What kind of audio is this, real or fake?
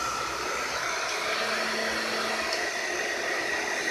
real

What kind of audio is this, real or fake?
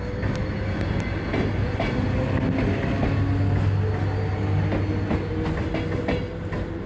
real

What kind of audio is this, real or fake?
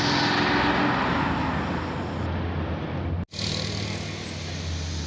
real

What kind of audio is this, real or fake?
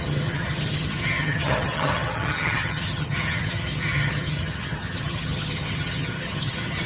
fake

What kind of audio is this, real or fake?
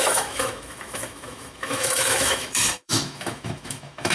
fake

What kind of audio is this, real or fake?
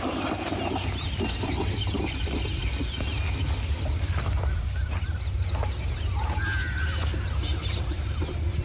real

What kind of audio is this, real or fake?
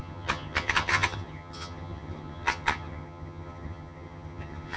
fake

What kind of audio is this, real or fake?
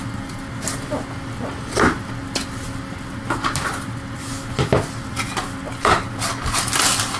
real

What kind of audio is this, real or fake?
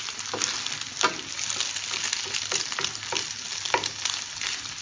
real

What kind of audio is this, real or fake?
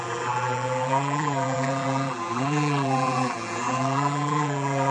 fake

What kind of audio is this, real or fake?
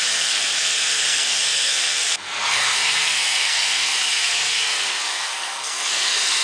fake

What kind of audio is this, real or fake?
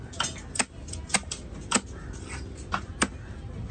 real